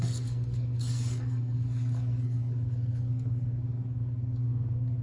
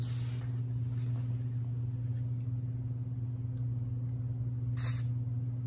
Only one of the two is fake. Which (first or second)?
first